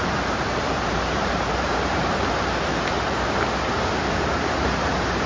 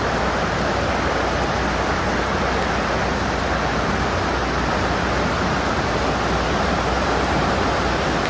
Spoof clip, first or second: first